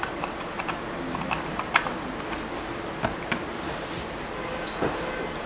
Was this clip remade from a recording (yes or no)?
no